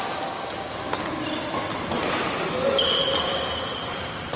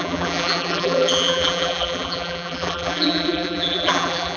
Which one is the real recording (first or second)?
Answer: first